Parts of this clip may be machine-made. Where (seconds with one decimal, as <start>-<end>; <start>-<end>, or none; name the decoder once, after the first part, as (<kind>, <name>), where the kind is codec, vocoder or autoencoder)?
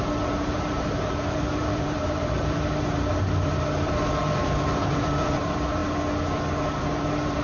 0.0-5.8 (vocoder, BigVGAN v2); 6.8-7.4